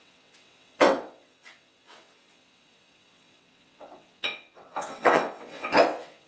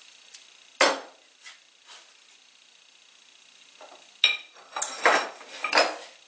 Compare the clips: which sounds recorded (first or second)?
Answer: second